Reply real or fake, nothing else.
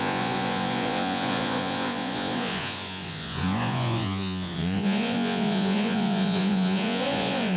fake